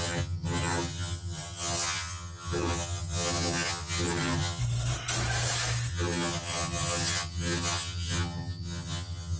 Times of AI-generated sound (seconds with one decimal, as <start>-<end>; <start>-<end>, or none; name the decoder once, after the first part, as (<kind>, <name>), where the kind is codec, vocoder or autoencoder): 0.0-4.6 (vocoder, HiFi-GAN); 5.9-9.4